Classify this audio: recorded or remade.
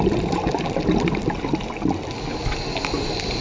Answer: recorded